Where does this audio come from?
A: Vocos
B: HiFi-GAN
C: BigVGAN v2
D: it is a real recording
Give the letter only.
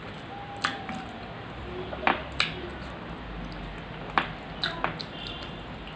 D